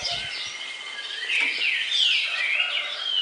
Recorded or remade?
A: recorded